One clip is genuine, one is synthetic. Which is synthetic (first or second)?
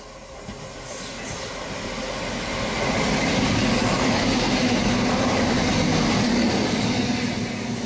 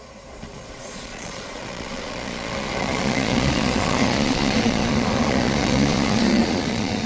second